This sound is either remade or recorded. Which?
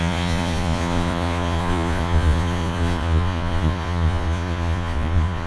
remade